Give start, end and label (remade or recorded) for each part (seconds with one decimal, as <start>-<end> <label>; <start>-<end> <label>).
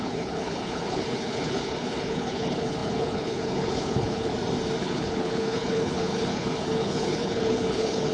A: 0.0-4.3 remade; 4.3-4.8 recorded; 4.8-8.1 remade